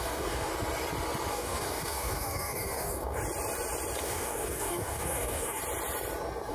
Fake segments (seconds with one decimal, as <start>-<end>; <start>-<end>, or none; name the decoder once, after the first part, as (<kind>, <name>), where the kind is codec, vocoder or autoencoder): 0.0-0.5 (codec, DAC); 1.3-3.2; 4.0-5.6